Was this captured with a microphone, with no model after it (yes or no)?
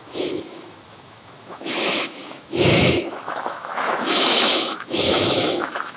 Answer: no